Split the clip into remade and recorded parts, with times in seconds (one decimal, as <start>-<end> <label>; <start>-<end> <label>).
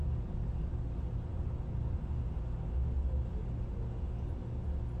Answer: 0.0-5.0 recorded